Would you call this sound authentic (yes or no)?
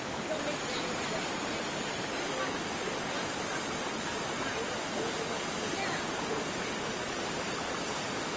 yes